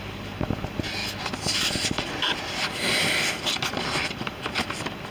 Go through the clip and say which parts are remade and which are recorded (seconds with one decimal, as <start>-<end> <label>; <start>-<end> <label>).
0.0-5.1 recorded